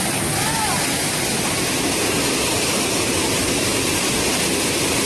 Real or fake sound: real